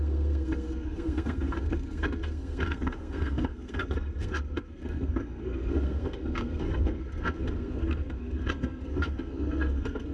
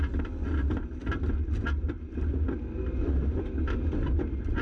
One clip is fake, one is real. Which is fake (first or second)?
first